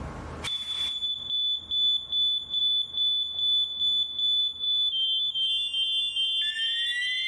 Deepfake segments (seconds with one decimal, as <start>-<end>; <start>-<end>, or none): 4.4-5.5